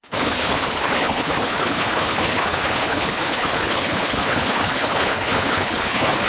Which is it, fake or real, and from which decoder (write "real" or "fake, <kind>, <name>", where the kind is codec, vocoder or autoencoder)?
fake, codec, HILCodec